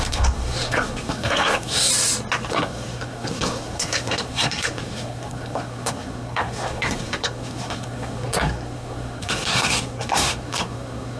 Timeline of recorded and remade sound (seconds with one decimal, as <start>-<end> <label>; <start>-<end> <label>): 0.0-1.9 remade; 1.9-2.5 recorded; 2.5-11.2 remade

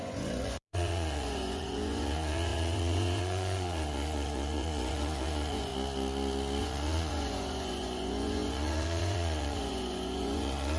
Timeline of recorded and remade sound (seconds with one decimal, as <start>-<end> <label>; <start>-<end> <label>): 0.0-5.7 remade; 5.7-6.6 recorded; 6.6-10.8 remade

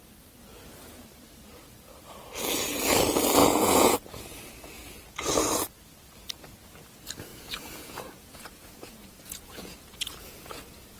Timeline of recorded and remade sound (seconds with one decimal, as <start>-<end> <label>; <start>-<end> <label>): 0.0-3.4 recorded; 3.4-4.5 remade; 4.5-7.3 recorded; 7.3-11.0 remade

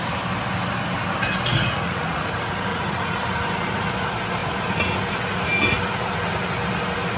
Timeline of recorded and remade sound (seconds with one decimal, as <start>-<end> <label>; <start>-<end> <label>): 0.0-1.5 recorded; 1.5-2.3 remade; 2.3-2.7 recorded; 2.7-3.2 remade; 3.2-7.2 recorded

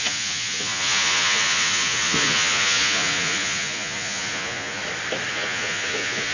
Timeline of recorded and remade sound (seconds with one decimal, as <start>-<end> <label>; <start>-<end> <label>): 0.0-4.8 remade; 4.8-5.3 recorded; 5.3-6.3 remade

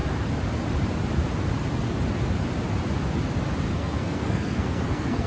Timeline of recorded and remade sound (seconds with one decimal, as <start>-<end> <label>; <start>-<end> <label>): 0.0-3.7 recorded; 3.7-5.3 remade

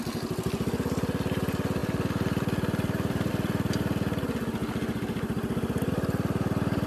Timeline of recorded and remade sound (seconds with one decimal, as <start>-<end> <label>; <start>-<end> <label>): 0.0-1.8 recorded; 1.8-3.3 remade; 3.3-6.9 recorded

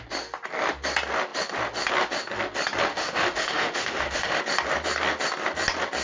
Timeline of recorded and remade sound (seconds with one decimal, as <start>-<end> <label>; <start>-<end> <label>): 0.0-2.9 recorded; 2.9-4.4 remade; 4.4-6.0 recorded